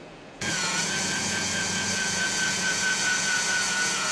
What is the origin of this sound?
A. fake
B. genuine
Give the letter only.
A